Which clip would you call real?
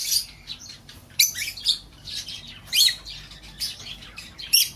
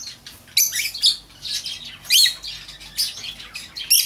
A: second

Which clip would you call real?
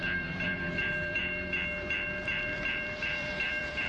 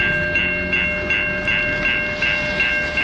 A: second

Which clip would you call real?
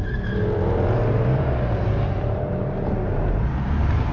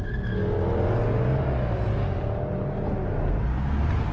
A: second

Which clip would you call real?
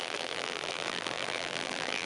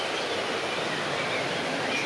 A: second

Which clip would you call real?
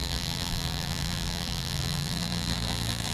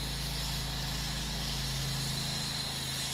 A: second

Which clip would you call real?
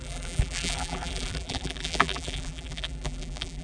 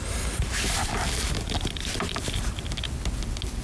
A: second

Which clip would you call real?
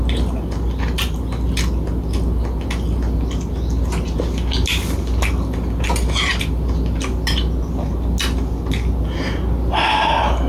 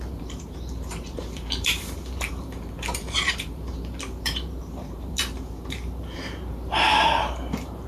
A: first